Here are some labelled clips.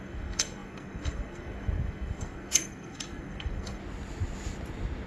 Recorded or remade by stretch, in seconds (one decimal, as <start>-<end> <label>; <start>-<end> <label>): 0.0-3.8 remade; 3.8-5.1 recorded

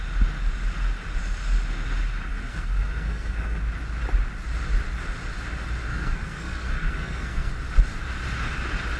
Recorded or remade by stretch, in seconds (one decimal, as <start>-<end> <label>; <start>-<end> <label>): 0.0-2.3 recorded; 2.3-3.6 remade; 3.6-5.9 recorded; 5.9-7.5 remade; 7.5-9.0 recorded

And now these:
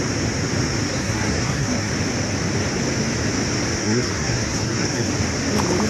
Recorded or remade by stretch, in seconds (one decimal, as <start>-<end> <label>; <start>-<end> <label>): 0.0-1.0 recorded; 1.0-1.9 remade; 1.9-3.8 recorded; 3.8-5.1 remade; 5.1-5.9 recorded

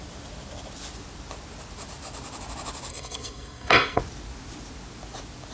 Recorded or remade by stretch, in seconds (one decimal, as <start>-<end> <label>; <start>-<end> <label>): 0.0-2.9 recorded; 2.9-4.0 remade; 4.0-5.5 recorded

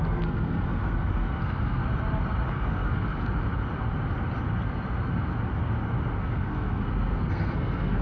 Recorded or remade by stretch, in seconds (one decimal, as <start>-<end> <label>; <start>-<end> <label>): 0.0-1.8 remade; 1.8-2.5 recorded; 2.5-3.1 remade; 3.1-6.2 recorded; 6.2-8.0 remade